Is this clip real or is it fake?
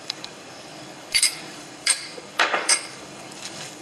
fake